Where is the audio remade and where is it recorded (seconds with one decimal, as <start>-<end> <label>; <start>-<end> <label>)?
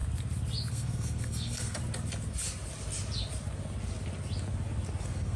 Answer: 0.0-0.7 recorded; 0.7-1.8 remade; 1.8-5.0 recorded; 5.0-5.4 remade